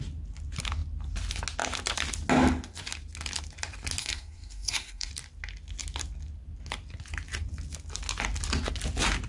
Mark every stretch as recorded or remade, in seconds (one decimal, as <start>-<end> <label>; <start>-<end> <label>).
0.0-4.0 recorded; 4.0-5.1 remade; 5.1-9.3 recorded